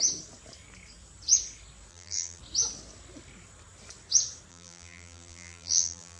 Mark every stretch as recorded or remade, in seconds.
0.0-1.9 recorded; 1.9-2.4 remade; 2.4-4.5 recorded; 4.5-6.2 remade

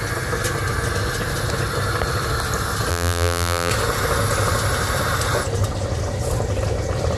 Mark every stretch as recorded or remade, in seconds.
0.0-2.9 recorded; 2.9-3.7 remade; 3.7-7.2 recorded

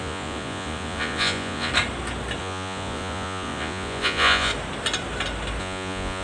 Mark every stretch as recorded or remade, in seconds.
0.0-1.7 remade; 1.7-2.4 recorded; 2.4-4.5 remade; 4.5-5.6 recorded; 5.6-6.2 remade